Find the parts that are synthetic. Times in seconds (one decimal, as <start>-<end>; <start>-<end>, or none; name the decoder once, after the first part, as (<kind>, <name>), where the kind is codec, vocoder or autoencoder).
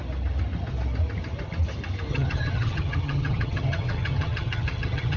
2.1-5.2 (vocoder, HiFi-GAN)